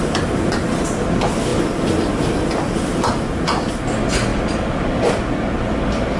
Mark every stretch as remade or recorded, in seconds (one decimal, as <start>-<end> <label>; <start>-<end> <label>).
0.0-6.2 recorded